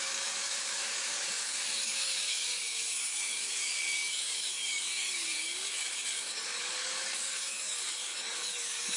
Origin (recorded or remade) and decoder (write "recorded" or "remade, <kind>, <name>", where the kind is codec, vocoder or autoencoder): remade, codec, DAC